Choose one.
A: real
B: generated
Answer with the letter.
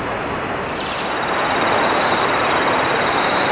B